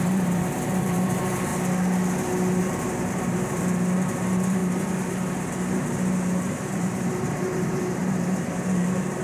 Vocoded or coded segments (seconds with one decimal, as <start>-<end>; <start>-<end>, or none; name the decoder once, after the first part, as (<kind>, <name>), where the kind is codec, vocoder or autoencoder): 0.0-1.5 (vocoder, BigVGAN v2); 2.6-9.2